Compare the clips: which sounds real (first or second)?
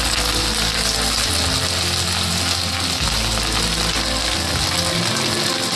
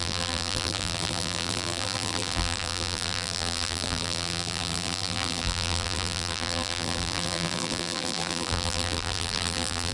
first